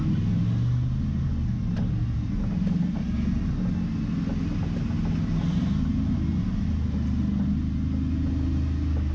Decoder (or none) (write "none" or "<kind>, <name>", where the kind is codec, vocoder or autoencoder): none